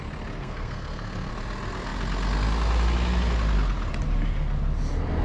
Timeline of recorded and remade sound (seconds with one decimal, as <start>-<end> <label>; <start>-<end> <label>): 0.0-0.4 recorded; 0.4-1.3 remade; 1.3-5.2 recorded